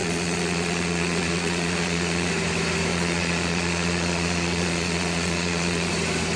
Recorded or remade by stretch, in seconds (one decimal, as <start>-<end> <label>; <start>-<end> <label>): 0.0-2.3 remade; 2.3-2.9 recorded; 2.9-5.9 remade; 5.9-6.4 recorded